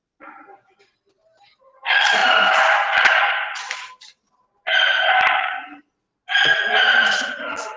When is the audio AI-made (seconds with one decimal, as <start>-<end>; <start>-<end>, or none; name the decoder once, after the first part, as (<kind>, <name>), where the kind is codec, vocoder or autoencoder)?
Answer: none